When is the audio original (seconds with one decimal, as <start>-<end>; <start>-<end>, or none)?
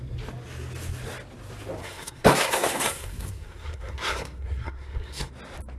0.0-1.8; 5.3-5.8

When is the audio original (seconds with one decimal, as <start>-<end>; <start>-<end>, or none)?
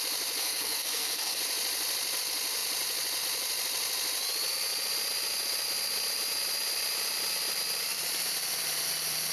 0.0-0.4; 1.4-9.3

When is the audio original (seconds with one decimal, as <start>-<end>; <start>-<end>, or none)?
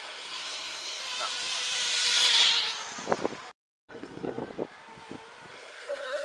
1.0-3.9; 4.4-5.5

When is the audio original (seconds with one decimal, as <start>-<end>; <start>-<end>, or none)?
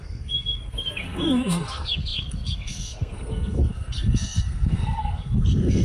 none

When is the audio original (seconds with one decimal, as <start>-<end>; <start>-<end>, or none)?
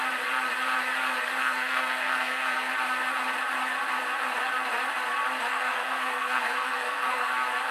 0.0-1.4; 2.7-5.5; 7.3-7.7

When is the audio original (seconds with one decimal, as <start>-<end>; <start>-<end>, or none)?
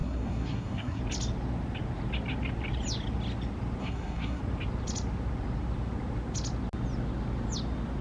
1.0-3.8; 4.4-8.0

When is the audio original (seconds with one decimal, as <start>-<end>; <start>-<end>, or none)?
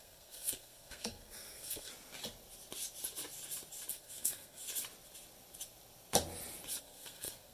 1.9-3.9; 4.6-6.8